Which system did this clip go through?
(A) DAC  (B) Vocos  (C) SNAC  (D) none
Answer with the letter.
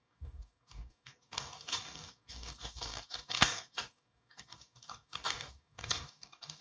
A